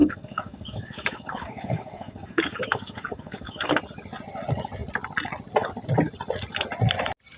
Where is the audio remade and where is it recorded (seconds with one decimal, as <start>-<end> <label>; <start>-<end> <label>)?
0.0-3.7 remade; 3.7-7.4 recorded